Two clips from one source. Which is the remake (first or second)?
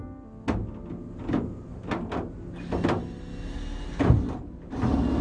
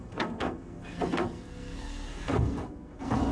second